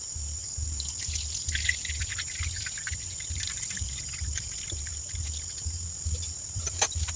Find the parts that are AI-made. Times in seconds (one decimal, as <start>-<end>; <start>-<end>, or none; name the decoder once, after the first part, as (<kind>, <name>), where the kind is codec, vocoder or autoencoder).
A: 0.0-0.4 (vocoder, BigVGAN v2); 3.3-4.9; 6.4-7.2